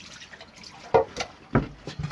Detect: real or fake real